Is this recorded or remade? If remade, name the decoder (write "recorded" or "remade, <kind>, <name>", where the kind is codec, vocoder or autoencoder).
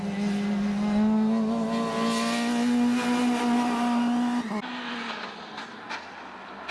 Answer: recorded